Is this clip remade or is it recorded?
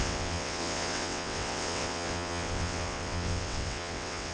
remade